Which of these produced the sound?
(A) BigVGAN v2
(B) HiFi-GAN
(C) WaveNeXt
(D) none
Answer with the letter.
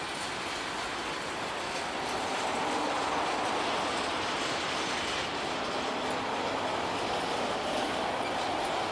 D